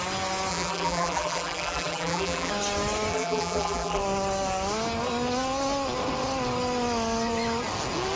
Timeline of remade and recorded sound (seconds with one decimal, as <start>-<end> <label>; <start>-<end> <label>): 0.0-0.5 recorded; 0.5-2.5 remade; 2.5-3.1 recorded; 3.1-4.0 remade; 4.0-8.2 recorded